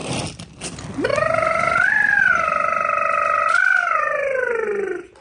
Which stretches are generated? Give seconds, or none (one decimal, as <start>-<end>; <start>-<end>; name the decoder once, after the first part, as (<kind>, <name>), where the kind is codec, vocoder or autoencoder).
1.1-2.3 (vocoder, BigVGAN v2)

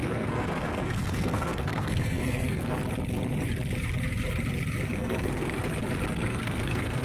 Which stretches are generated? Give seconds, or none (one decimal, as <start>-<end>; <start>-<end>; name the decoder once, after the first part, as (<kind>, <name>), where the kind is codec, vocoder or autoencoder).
0.0-2.7 (codec, SNAC); 4.9-5.6; 6.2-7.0

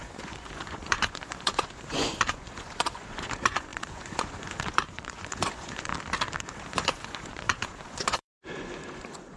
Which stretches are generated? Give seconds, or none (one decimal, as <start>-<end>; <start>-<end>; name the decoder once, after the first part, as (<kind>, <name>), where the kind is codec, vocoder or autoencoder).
0.0-5.9 (vocoder, Vocos); 6.4-9.4

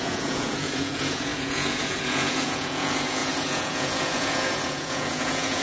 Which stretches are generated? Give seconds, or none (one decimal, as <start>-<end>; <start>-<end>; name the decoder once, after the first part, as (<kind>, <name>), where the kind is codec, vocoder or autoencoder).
0.0-5.6 (vocoder, Vocos)

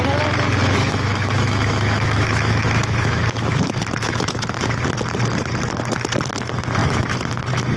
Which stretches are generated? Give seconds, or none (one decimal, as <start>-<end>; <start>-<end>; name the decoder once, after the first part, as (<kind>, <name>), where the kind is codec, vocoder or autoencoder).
0.6-4.8 (autoencoder, DAC-VAE); 6.8-7.3